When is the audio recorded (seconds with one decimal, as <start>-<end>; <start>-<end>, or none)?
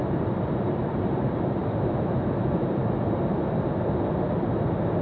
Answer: 2.8-5.0